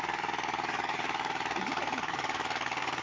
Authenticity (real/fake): fake